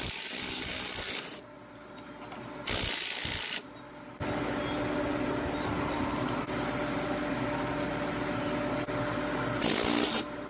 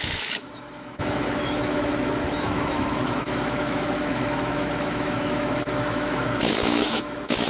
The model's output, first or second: second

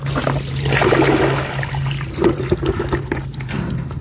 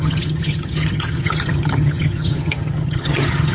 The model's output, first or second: second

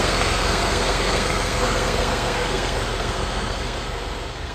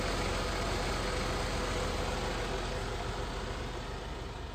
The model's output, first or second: first